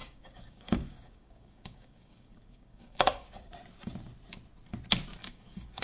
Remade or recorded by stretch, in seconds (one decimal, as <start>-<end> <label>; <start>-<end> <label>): 0.0-3.5 remade; 3.5-5.2 recorded; 5.2-5.8 remade